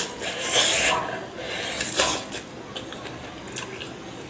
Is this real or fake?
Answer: real